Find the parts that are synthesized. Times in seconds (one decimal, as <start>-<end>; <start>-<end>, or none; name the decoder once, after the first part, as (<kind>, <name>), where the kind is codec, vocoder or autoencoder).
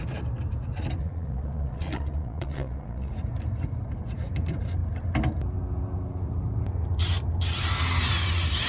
1.0-3.1 (vocoder, Vocos)